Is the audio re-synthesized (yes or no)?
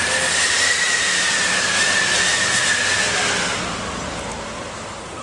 no